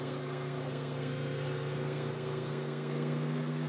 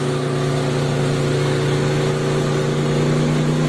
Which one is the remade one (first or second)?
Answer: first